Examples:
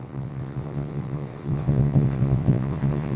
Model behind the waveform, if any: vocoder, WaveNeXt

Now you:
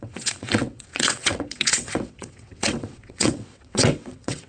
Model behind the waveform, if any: vocoder, WaveNeXt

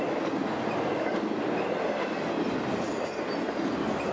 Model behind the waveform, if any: none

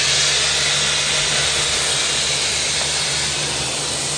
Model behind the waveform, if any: none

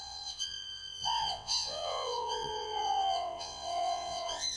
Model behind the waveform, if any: vocoder, WaveNeXt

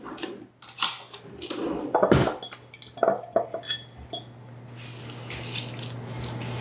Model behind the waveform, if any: none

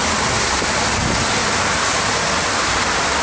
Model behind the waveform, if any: none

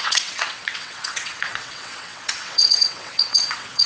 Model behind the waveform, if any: vocoder, WaveNeXt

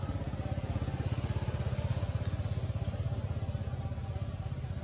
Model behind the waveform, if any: none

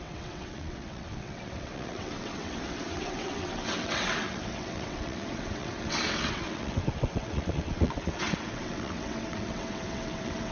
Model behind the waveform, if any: vocoder, WaveNeXt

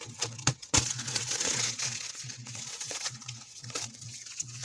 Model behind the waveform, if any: vocoder, WaveNeXt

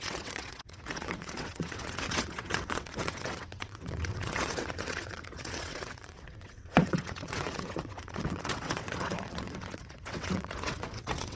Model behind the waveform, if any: vocoder, WaveNeXt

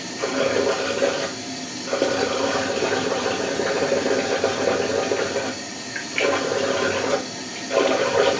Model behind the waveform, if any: none